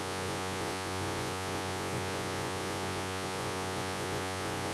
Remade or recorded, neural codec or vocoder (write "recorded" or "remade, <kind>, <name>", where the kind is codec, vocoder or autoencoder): remade, vocoder, Vocos